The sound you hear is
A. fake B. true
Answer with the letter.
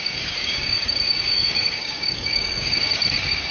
A